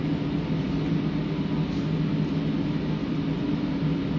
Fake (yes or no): no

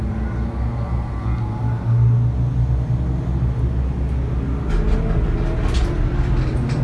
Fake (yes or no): no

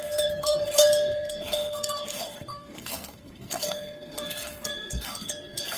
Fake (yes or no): yes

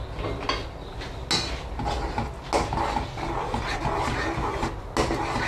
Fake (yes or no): no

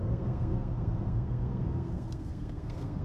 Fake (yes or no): yes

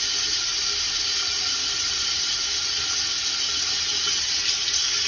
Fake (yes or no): no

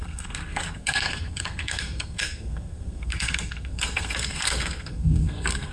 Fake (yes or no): yes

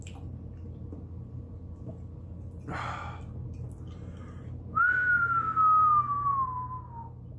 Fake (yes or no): no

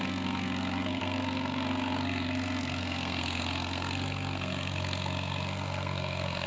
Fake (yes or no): yes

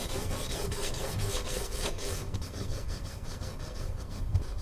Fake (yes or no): yes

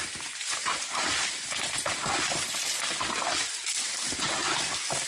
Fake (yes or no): no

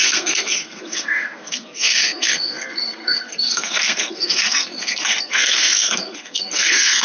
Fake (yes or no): yes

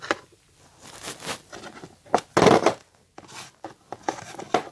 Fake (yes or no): no